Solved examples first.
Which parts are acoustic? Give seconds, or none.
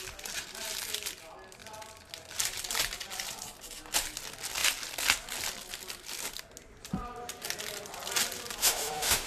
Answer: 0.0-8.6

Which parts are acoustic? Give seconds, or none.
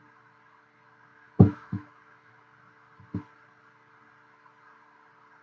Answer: 0.0-1.1; 2.3-5.4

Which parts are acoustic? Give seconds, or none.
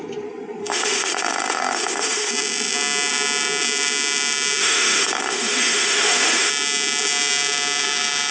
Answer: 0.0-0.6; 2.3-4.6; 6.5-8.3